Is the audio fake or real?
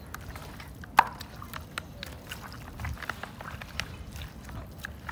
real